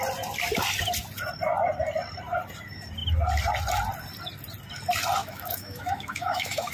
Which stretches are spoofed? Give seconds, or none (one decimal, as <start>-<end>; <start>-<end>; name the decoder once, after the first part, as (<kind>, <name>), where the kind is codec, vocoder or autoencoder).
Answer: 5.2-6.7 (autoencoder, DAC-VAE)